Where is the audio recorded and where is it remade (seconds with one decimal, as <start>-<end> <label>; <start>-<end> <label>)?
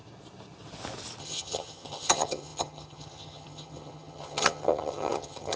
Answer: 0.0-1.2 recorded; 1.2-5.6 remade